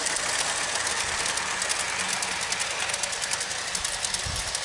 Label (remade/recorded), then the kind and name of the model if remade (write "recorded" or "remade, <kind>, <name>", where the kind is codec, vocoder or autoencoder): recorded